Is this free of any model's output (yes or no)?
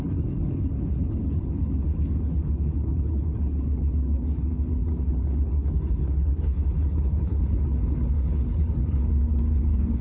no